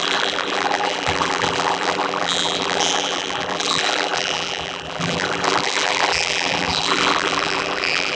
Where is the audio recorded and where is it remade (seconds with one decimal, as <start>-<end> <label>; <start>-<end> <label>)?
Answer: 0.0-8.1 remade